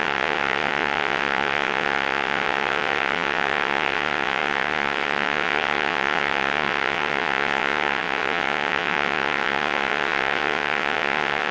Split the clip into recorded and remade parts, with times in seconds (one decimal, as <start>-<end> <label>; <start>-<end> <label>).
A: 0.0-11.5 remade